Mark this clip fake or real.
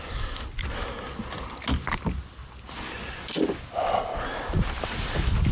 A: real